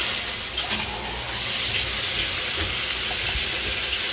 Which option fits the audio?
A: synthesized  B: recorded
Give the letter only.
B